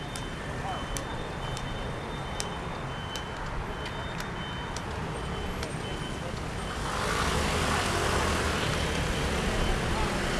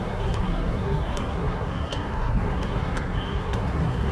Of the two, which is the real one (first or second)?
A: first